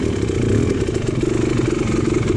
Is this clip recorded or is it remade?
recorded